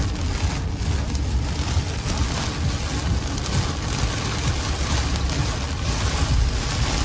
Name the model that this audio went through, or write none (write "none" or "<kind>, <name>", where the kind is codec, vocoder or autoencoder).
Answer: none